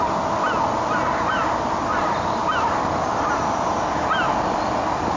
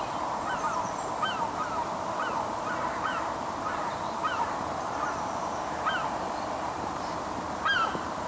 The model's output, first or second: second